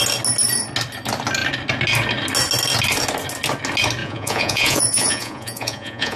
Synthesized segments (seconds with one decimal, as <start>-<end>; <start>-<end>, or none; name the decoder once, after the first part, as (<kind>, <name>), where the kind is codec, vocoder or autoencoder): 4.0-6.2 (vocoder, Vocos)